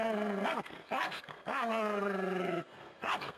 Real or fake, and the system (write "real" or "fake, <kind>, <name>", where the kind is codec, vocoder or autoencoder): fake, codec, SNAC